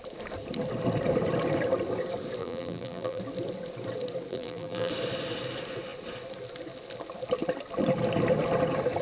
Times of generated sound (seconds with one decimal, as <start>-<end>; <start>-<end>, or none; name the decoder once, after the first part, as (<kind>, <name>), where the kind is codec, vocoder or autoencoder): 2.4-3.2 (vocoder, BigVGAN v2); 4.3-4.9